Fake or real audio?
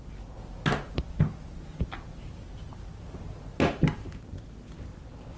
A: real